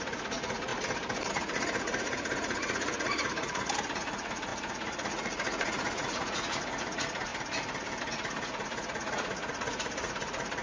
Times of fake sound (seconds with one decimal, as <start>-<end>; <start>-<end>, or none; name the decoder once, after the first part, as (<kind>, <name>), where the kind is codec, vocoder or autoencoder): 0.0-0.7 (vocoder, Vocos); 1.3-7.3; 8.0-10.6